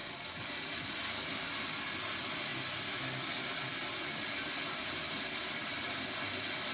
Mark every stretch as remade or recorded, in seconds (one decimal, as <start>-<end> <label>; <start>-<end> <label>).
0.0-6.7 recorded